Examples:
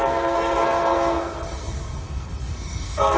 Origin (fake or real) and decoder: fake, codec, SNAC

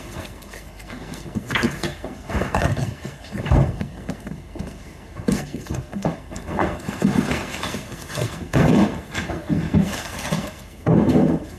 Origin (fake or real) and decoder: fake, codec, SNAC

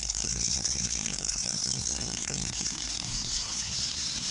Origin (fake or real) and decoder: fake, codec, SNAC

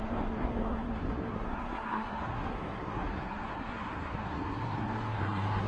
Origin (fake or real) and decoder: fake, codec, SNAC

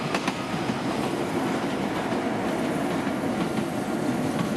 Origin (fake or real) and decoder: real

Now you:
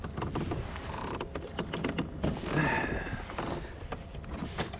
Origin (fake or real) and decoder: real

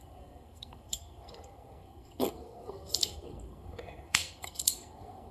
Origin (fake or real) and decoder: fake, codec, SNAC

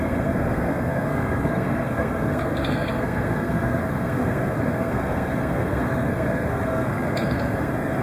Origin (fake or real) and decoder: fake, codec, SNAC